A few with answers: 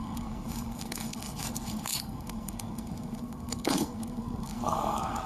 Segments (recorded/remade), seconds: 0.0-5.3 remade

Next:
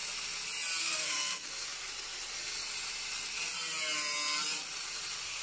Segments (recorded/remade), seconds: 0.0-0.8 recorded; 0.8-1.5 remade; 1.5-5.4 recorded